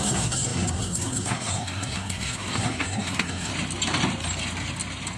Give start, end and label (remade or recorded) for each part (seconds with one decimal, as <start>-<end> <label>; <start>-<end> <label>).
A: 0.0-3.5 remade; 3.5-5.2 recorded